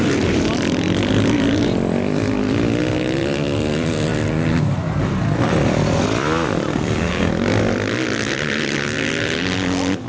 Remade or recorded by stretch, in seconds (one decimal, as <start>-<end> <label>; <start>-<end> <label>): 0.0-6.7 recorded; 6.7-7.3 remade; 7.3-10.1 recorded